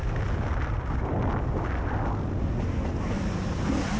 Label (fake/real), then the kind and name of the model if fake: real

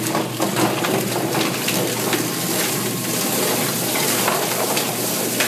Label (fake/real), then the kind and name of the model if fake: real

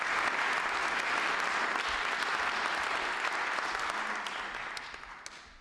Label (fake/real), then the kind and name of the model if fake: real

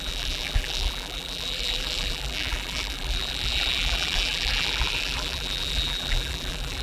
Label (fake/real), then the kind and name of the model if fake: fake, vocoder, BigVGAN v2